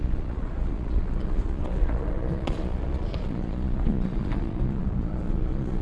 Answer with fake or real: fake